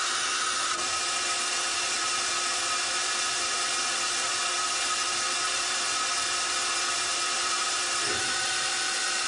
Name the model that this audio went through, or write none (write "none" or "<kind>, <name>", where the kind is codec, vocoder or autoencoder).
vocoder, BigVGAN v2